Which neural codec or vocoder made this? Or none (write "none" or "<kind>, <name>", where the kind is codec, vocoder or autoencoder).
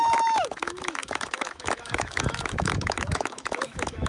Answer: autoencoder, DAC-VAE